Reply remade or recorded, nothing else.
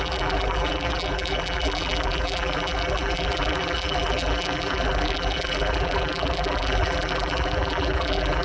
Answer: remade